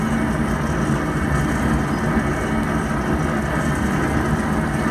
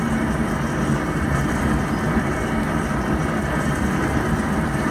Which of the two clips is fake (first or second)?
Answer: second